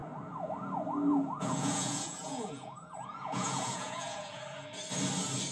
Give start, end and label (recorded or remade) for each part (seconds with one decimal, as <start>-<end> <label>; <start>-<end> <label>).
0.0-1.1 recorded; 1.1-4.4 remade; 4.4-5.5 recorded